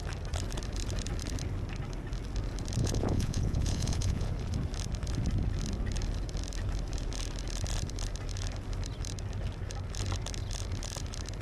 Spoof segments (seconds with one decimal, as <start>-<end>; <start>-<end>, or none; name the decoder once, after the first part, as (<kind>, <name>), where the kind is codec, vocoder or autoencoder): 2.8-4.3 (vocoder, Vocos)